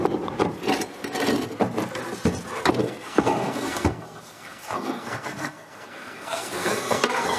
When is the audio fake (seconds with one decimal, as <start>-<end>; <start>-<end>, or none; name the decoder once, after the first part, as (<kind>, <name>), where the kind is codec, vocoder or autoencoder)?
2.8-7.4 (codec, SNAC)